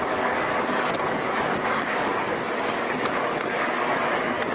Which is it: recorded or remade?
remade